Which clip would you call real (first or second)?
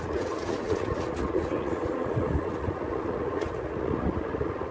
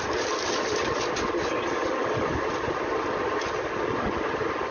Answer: second